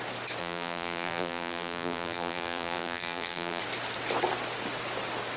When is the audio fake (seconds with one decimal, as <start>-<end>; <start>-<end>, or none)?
0.4-3.6